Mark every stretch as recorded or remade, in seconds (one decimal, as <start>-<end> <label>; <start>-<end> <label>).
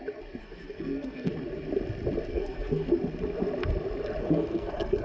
0.0-0.4 recorded; 0.4-1.3 remade; 1.3-2.3 recorded; 2.3-2.9 remade; 2.9-4.2 recorded; 4.2-5.0 remade